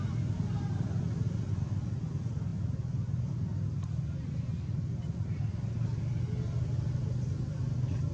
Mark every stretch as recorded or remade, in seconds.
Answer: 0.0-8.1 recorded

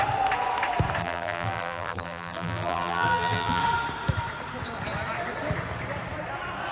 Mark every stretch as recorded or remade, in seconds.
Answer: 0.0-1.0 recorded; 1.0-3.6 remade; 3.6-6.7 recorded

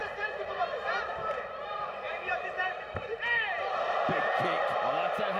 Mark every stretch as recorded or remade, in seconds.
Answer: 0.0-3.2 remade; 3.2-5.4 recorded

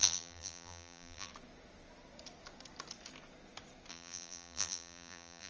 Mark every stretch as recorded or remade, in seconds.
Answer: 0.0-1.3 remade; 1.3-3.9 recorded; 3.9-5.5 remade